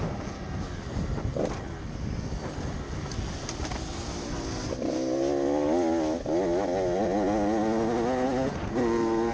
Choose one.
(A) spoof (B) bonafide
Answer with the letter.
B